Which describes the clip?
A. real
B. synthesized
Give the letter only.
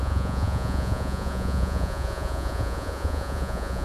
B